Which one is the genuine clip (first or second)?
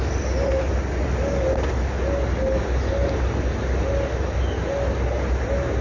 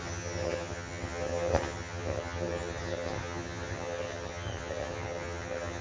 first